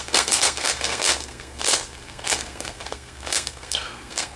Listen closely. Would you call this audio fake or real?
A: fake